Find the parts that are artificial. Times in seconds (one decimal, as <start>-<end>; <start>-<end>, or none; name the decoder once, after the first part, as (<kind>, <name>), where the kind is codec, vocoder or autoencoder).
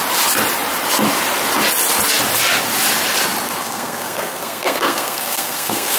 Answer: 3.6-6.0 (codec, SNAC)